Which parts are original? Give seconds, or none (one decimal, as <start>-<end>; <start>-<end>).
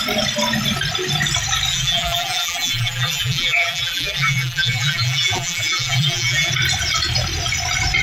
0.0-1.7; 6.5-8.0